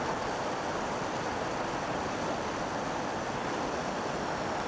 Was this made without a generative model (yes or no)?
yes